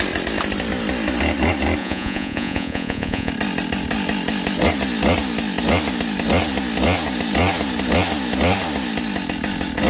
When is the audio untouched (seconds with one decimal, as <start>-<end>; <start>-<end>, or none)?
0.0-1.8; 3.3-9.9